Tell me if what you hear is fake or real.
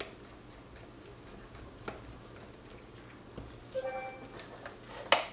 real